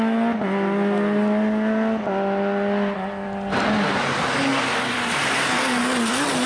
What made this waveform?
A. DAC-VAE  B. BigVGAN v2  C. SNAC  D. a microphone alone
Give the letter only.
D